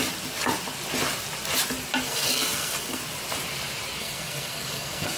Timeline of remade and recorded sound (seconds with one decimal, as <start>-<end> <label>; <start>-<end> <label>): 0.0-2.0 recorded; 2.0-3.0 remade; 3.0-4.0 recorded; 4.0-5.2 remade